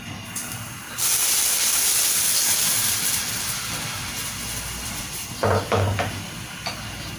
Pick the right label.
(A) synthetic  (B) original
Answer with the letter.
A